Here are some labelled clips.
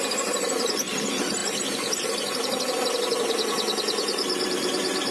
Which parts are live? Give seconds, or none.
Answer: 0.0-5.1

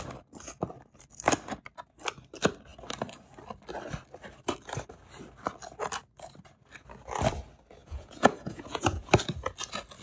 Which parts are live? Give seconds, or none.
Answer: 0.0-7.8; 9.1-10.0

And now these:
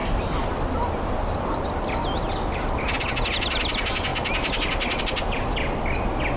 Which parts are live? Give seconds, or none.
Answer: 0.0-6.4

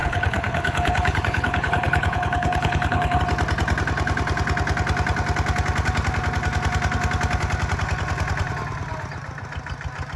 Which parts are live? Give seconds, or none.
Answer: 3.2-10.2

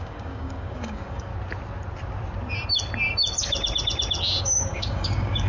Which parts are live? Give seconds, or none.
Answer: 1.3-4.4